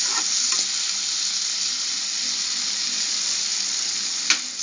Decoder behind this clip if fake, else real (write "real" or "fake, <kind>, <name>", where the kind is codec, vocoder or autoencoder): real